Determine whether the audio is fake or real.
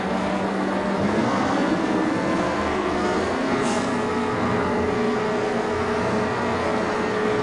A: fake